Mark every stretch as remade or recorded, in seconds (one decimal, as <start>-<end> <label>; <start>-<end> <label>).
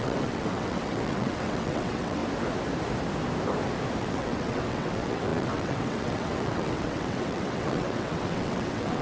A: 0.0-2.2 remade; 2.2-4.0 recorded; 4.0-9.0 remade